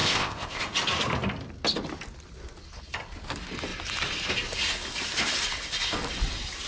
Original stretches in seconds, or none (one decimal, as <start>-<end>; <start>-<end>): 0.6-6.7